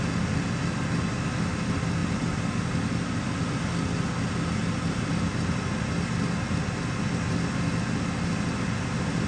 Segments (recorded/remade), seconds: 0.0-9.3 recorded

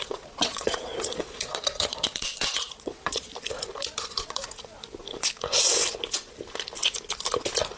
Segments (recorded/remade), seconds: 0.0-3.3 remade; 3.3-4.0 recorded; 4.0-4.4 remade; 4.4-7.8 recorded

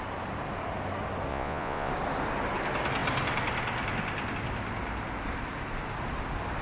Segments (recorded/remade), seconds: 0.0-1.3 recorded; 1.3-1.9 remade; 1.9-6.6 recorded

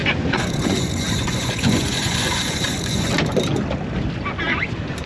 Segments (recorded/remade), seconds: 0.0-3.1 remade; 3.1-5.1 recorded

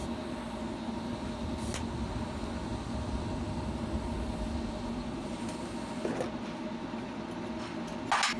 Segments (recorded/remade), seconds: 0.0-8.4 recorded